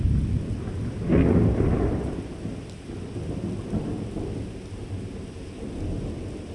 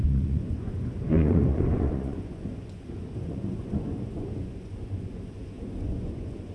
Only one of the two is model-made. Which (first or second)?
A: second